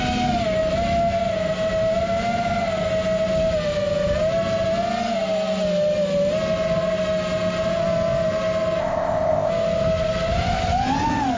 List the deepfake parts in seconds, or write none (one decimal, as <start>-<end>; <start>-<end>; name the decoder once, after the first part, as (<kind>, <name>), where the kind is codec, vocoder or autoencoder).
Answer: 8.8-9.5 (codec, ZipCodec)